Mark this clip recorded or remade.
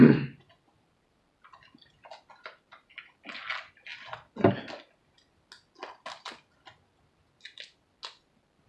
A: recorded